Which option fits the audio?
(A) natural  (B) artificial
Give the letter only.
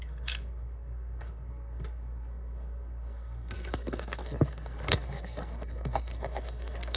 B